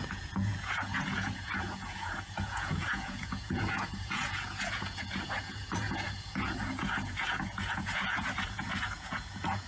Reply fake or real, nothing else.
fake